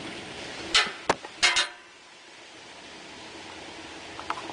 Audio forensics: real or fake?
real